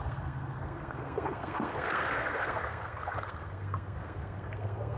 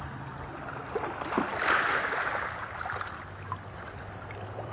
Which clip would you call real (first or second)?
second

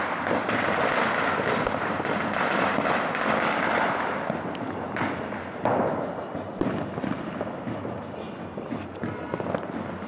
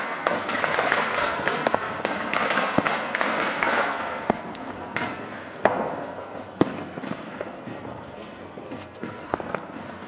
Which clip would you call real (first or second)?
first